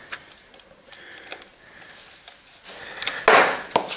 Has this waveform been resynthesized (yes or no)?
no